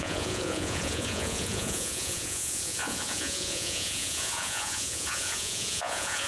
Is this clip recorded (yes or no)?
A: no